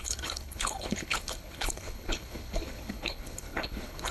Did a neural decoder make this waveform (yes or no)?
yes